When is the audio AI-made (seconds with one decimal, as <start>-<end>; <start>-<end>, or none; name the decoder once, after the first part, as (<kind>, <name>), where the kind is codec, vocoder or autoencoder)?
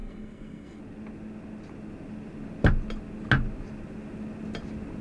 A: 0.0-0.8 (codec, SNAC)